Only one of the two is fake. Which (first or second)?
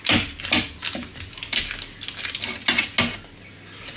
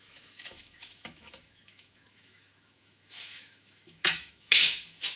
second